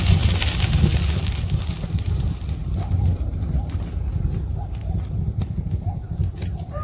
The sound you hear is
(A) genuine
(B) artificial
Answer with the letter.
A